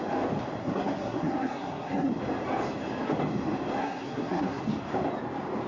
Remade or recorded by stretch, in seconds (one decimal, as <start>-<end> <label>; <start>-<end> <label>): 0.0-0.6 recorded; 0.6-2.1 remade; 2.1-3.8 recorded; 3.8-4.6 remade; 4.6-5.7 recorded